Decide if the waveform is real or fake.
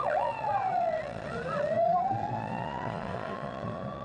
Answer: fake